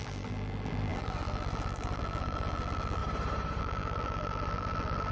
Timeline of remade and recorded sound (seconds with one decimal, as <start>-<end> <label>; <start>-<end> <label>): 0.0-3.0 remade; 3.0-3.6 recorded; 3.6-5.1 remade